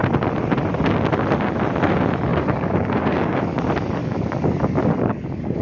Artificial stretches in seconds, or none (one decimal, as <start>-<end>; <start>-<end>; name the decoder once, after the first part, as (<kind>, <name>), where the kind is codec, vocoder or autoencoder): 2.3-3.6 (codec, DAC); 4.0-5.6